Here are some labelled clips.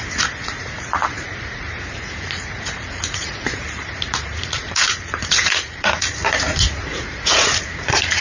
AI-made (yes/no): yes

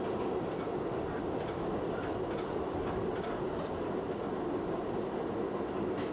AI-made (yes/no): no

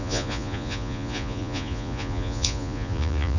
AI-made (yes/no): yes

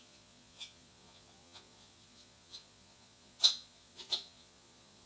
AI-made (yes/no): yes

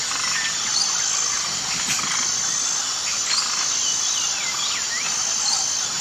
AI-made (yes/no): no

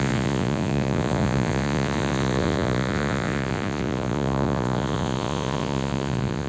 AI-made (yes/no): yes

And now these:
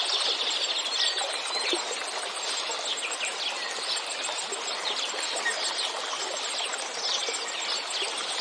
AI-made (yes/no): no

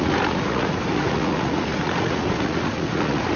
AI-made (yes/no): yes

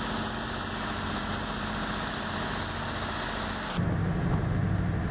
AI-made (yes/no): no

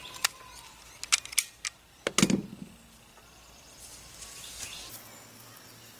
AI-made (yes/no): no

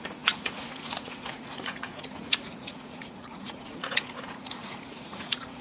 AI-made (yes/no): yes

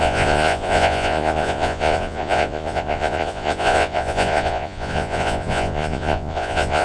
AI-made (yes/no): yes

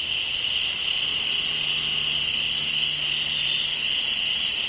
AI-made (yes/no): no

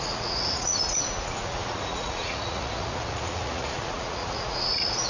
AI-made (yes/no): yes